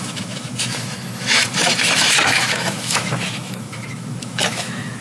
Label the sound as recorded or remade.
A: remade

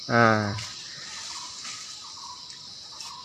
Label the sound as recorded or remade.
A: remade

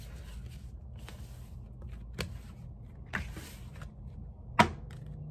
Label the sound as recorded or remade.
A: recorded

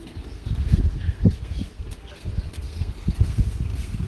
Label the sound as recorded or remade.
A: remade